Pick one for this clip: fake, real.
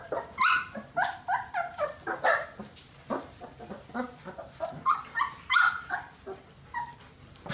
real